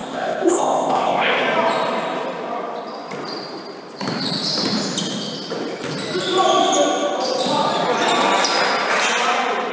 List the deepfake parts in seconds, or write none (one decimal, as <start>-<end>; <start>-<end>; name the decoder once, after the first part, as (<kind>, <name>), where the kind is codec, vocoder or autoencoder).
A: 0.0-1.4 (codec, ZipCodec)